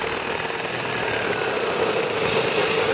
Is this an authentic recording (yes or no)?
yes